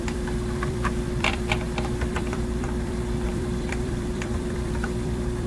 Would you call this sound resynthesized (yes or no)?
yes